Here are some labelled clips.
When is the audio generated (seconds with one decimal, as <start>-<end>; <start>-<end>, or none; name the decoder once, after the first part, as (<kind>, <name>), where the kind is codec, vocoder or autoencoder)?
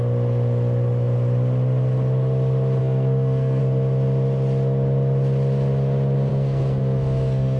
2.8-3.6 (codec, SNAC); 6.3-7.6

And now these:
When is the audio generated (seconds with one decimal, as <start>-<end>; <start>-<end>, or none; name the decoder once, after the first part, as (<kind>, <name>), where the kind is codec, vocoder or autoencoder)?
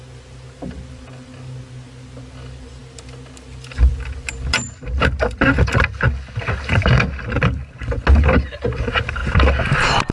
none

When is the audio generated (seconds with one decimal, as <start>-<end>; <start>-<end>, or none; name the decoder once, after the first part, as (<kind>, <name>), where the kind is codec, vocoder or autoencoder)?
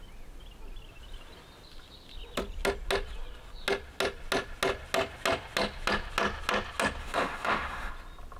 7.0-7.9 (autoencoder, DAC-VAE)